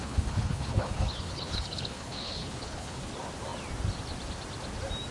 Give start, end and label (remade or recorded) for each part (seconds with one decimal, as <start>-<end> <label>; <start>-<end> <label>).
0.0-3.1 remade; 3.1-5.1 recorded